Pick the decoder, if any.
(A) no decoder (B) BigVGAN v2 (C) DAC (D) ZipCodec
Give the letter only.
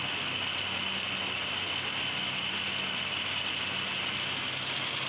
A